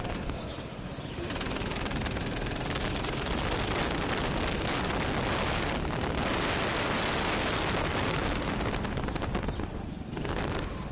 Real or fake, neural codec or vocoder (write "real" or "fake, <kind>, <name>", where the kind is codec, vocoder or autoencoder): real